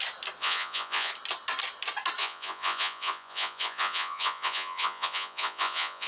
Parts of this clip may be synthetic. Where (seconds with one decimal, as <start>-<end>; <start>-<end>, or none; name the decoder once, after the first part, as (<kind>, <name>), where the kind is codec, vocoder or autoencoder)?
0.4-1.1 (vocoder, Vocos); 2.2-6.1